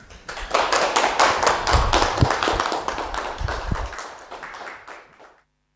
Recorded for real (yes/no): yes